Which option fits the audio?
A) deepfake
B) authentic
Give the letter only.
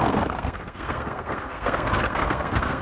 A